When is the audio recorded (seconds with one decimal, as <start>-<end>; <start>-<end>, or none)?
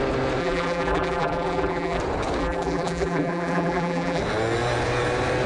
0.0-0.4; 2.0-2.4; 4.2-5.5